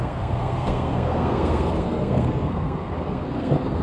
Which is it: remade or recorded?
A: remade